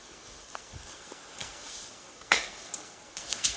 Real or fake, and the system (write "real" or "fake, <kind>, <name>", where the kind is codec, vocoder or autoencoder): fake, codec, SNAC